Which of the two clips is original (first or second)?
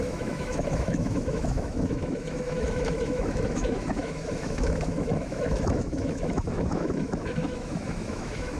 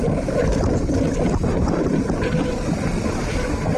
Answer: second